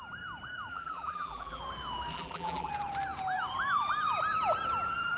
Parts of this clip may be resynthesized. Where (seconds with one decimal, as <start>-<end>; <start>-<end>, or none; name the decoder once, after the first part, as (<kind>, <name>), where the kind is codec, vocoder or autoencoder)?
0.7-1.6 (vocoder, BigVGAN v2); 2.1-2.7